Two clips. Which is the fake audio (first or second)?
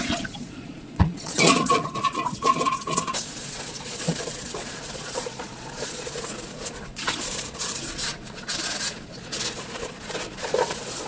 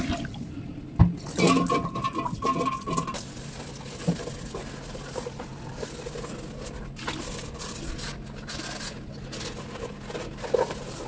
first